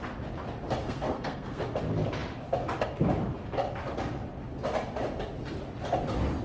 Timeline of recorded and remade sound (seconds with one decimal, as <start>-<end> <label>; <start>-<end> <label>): 0.0-0.8 recorded; 0.8-1.6 remade; 1.6-6.4 recorded